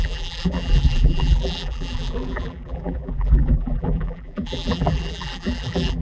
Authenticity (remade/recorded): remade